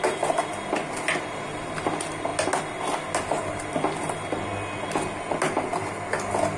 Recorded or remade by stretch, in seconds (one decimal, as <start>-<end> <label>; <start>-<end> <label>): 0.0-6.6 recorded